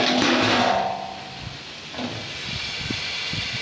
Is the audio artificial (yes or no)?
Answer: no